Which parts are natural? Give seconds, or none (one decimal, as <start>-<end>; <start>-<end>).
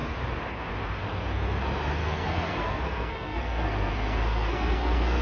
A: 0.0-2.0